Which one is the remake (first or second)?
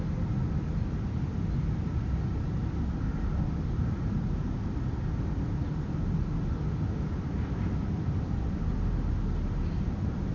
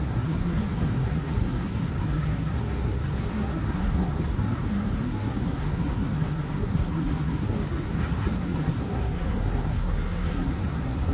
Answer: second